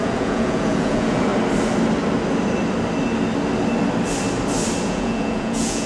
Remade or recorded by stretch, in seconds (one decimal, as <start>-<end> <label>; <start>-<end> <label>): 0.0-1.3 remade; 1.3-4.8 recorded; 4.8-5.9 remade